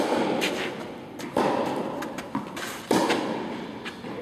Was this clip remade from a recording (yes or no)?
no